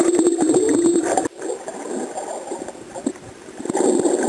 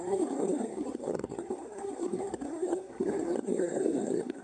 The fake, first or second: second